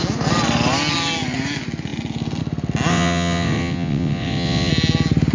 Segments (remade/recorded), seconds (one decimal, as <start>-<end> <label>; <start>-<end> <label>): 0.0-2.9 recorded; 2.9-4.7 remade; 4.7-5.3 recorded